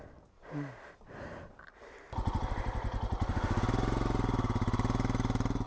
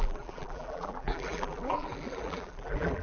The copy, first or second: second